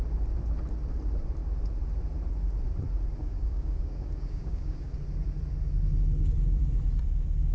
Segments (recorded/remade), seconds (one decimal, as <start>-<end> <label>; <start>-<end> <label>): 0.0-3.2 recorded; 3.2-5.0 remade; 5.0-7.5 recorded